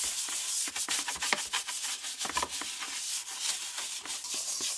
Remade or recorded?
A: recorded